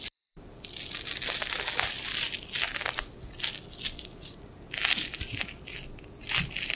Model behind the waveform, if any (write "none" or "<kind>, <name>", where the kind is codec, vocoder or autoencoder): none